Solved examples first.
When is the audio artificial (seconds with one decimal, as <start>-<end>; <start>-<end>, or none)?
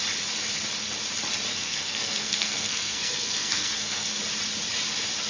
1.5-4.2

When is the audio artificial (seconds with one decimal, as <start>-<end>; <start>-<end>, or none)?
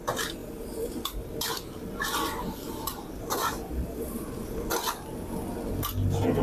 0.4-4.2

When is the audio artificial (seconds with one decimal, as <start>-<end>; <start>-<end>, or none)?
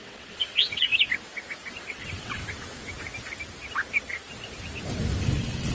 0.0-0.9; 1.9-2.4; 5.2-5.7